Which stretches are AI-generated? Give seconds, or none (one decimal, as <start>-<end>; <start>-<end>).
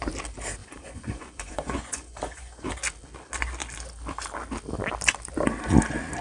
0.6-2.7